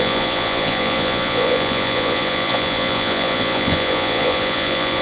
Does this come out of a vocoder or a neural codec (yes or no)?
yes